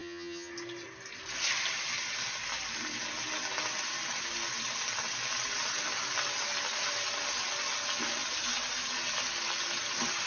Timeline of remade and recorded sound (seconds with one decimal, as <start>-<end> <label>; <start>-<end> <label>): 0.0-0.5 remade; 0.5-10.3 recorded